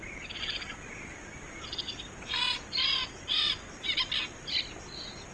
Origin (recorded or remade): recorded